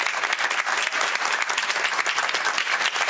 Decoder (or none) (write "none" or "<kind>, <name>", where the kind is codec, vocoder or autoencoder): none